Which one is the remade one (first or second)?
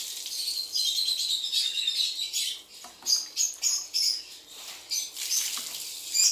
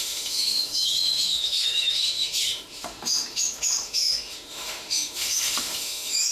second